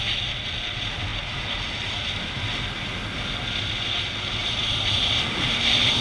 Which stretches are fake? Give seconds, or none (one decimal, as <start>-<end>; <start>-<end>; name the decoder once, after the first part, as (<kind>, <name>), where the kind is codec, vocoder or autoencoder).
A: 4.4-6.0 (vocoder, BigVGAN v2)

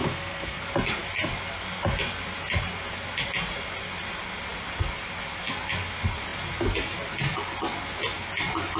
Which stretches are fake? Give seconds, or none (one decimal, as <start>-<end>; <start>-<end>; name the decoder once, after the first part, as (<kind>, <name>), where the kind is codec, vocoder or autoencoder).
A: 0.0-0.6 (codec, SNAC)

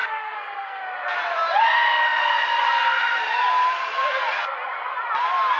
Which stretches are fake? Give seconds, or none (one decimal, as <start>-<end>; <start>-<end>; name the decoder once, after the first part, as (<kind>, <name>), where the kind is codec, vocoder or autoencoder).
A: 0.0-0.8 (codec, SNAC)